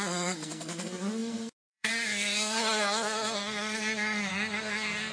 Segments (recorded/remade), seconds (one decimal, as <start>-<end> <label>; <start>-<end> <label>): 0.0-5.1 remade